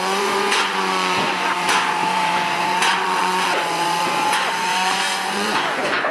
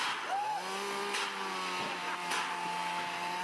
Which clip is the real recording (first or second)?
second